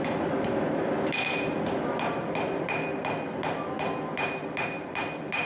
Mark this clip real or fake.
real